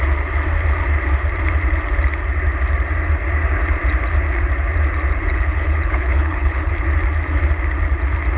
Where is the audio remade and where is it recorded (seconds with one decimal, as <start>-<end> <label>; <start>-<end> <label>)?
0.0-5.3 recorded; 5.3-6.7 remade; 6.7-8.4 recorded